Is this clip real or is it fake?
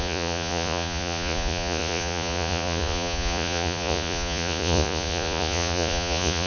fake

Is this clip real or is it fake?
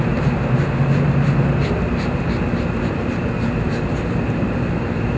fake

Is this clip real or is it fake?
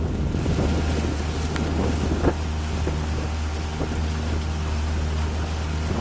real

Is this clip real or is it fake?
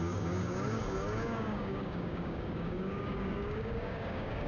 fake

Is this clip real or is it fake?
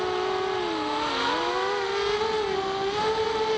real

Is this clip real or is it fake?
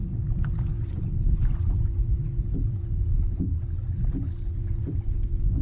real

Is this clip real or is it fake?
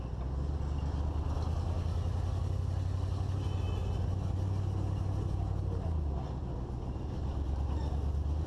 real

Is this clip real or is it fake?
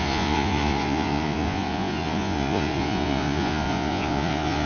fake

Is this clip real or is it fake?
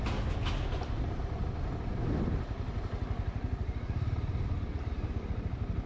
real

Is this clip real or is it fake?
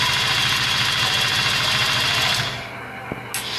real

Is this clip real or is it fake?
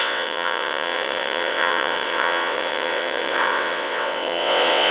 fake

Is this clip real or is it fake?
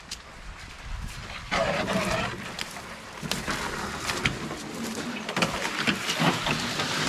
real